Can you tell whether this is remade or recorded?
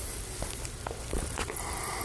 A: remade